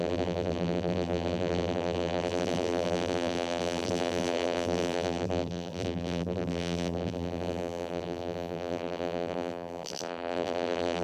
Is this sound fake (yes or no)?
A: yes